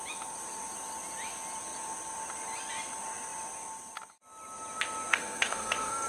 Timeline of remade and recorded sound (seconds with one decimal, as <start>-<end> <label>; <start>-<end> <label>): 0.0-5.1 recorded; 5.1-6.1 remade